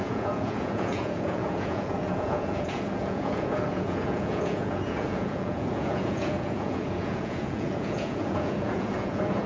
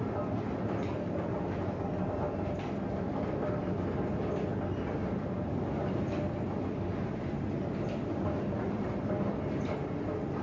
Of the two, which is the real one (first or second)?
second